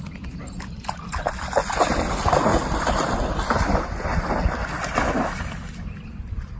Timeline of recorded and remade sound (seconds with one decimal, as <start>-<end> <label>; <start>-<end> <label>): 0.0-6.6 recorded